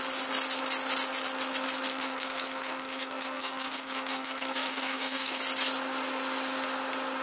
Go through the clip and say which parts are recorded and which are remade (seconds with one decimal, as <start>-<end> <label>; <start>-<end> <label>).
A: 0.0-1.9 recorded; 1.9-5.4 remade; 5.4-7.2 recorded